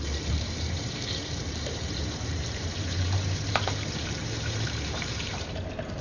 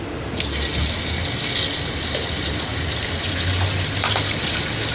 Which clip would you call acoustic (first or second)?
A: second